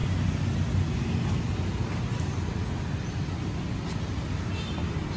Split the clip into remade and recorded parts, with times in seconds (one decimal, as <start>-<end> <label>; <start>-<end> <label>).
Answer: 0.0-5.2 recorded